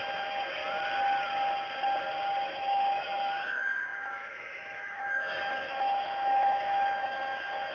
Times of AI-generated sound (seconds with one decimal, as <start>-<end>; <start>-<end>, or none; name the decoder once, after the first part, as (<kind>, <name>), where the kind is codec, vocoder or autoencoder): 0.0-0.6 (autoencoder, DAC-VAE); 2.5-7.7